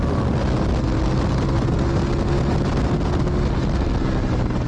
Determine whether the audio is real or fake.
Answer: real